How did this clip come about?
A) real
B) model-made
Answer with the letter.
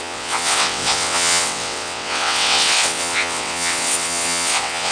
B